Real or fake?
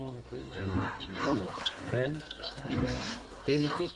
fake